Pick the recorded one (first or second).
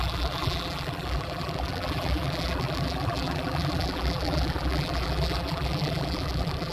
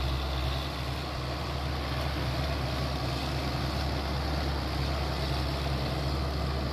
second